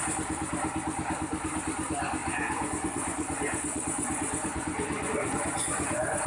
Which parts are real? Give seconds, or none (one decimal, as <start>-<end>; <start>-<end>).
0.0-2.2

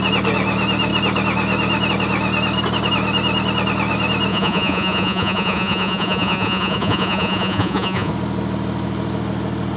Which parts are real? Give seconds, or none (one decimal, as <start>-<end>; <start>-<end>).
0.0-4.3; 8.1-9.8